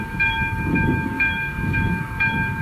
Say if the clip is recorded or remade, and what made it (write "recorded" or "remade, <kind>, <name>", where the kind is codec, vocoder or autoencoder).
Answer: remade, codec, DAC